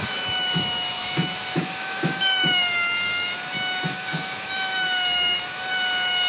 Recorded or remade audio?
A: remade